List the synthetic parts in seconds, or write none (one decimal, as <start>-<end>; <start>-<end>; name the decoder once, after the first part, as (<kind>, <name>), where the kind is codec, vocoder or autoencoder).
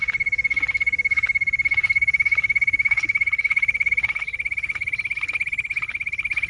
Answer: 1.8-3.9 (vocoder, BigVGAN v2)